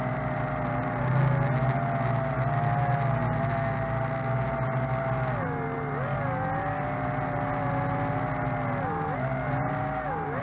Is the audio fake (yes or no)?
no